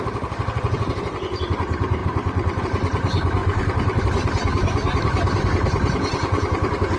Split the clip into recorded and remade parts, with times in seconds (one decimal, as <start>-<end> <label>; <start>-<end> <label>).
0.0-7.0 remade